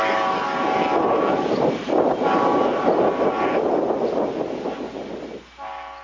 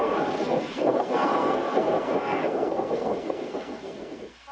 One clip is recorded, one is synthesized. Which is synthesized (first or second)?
second